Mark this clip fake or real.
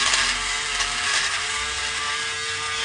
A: real